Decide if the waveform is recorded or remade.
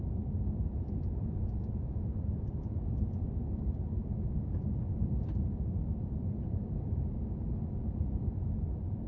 remade